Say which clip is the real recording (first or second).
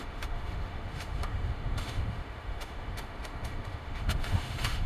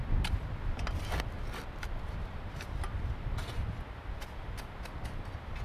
second